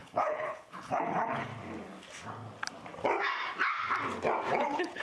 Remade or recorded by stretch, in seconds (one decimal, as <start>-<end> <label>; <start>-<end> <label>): 0.0-1.5 remade; 1.5-4.5 recorded; 4.5-5.0 remade